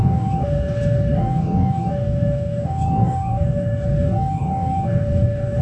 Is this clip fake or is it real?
fake